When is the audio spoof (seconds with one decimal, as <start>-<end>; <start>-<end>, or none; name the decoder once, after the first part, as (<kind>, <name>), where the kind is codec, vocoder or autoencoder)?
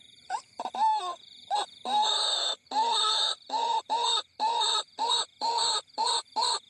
0.0-6.7 (vocoder, BigVGAN v2)